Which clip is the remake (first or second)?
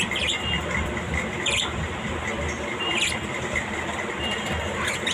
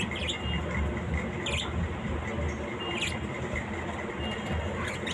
first